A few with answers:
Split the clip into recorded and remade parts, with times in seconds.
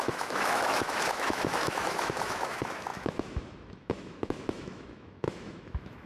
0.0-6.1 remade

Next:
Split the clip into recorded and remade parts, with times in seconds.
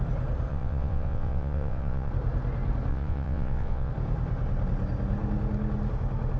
0.0-0.5 recorded; 0.5-2.1 remade; 2.1-2.9 recorded; 2.9-3.9 remade; 3.9-6.4 recorded